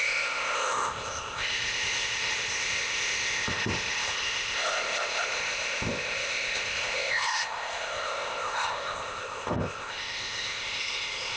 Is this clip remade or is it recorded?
remade